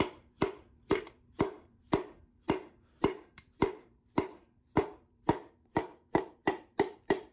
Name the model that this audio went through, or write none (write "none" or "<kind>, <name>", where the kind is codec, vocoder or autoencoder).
vocoder, BigVGAN v2